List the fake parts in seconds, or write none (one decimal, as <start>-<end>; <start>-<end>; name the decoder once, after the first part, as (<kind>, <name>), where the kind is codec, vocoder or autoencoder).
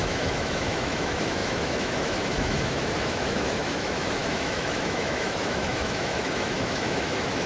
0.0-7.5 (autoencoder, DAC-VAE)